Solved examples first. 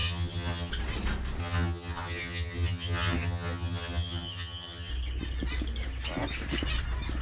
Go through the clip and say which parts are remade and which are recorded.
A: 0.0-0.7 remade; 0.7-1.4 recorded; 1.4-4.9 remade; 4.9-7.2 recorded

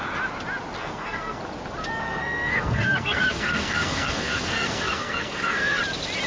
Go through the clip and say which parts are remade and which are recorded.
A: 0.0-0.8 recorded; 0.8-1.4 remade; 1.4-2.0 recorded; 2.0-5.8 remade; 5.8-6.3 recorded

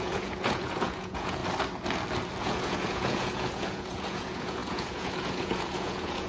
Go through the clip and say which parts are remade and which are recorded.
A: 0.0-1.4 remade; 1.4-2.4 recorded; 2.4-6.3 remade

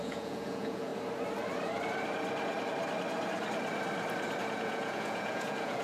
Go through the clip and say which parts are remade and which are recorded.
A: 0.0-0.9 remade; 0.9-4.4 recorded; 4.4-5.8 remade

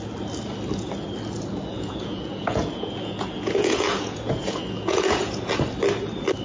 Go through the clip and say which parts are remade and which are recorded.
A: 0.0-1.7 recorded; 1.7-5.5 remade; 5.5-6.4 recorded

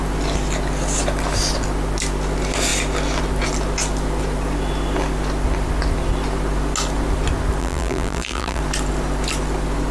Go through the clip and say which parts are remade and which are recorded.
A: 0.0-7.6 recorded; 7.6-8.6 remade; 8.6-9.9 recorded